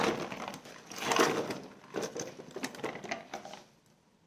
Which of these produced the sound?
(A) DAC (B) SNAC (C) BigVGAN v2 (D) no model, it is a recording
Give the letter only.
D